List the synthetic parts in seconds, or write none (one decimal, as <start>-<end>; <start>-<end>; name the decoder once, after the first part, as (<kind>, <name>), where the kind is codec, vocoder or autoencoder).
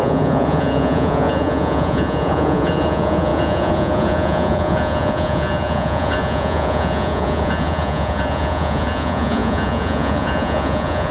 0.0-11.1 (vocoder, Vocos)